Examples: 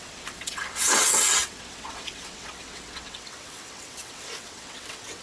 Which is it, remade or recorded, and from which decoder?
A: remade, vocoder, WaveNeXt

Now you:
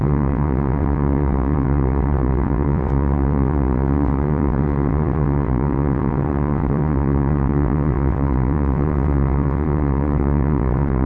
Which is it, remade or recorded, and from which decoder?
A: remade, vocoder, WaveNeXt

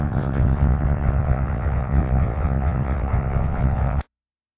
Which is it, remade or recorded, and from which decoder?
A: remade, vocoder, WaveNeXt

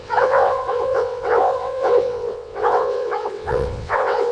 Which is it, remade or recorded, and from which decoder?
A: remade, vocoder, WaveNeXt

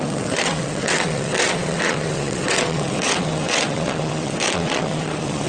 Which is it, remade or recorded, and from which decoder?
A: remade, vocoder, WaveNeXt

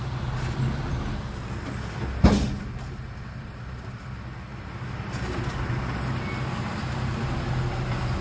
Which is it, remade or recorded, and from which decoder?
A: recorded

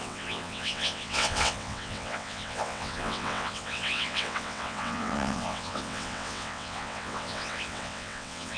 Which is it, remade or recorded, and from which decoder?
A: remade, vocoder, WaveNeXt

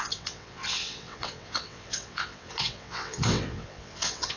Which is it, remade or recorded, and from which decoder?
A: remade, vocoder, WaveNeXt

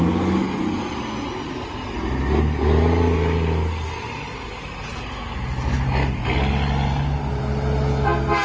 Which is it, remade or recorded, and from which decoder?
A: recorded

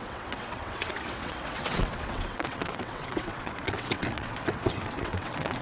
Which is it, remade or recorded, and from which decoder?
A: remade, vocoder, WaveNeXt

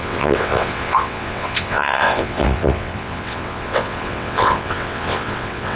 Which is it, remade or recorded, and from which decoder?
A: remade, vocoder, WaveNeXt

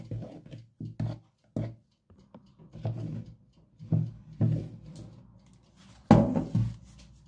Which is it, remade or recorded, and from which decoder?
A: recorded